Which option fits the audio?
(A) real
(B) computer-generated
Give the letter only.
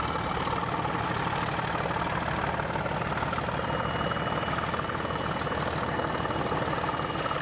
A